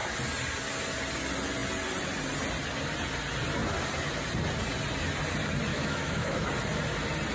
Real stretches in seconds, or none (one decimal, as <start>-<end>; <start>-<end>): 0.0-5.7; 6.5-7.3